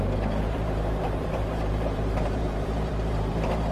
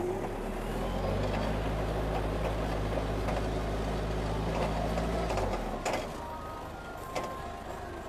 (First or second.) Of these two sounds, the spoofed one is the first